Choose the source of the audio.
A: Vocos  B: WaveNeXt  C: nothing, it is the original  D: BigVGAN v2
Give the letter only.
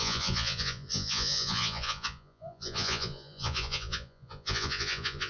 A